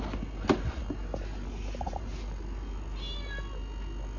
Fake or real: real